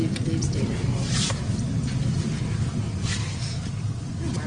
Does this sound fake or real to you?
real